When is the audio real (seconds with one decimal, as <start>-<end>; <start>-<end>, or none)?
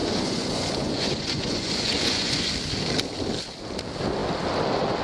2.5-5.0